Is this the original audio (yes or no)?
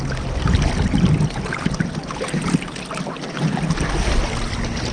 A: yes